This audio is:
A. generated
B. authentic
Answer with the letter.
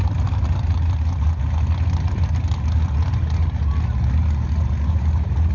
B